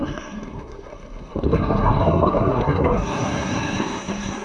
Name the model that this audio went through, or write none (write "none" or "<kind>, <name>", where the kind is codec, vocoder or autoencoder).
codec, SNAC